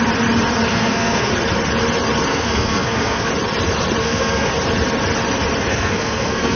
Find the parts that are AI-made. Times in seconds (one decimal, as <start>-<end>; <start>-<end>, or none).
0.7-1.3; 2.3-3.3; 4.0-4.5; 5.7-6.6